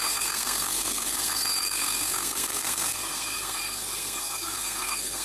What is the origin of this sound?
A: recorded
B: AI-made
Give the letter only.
B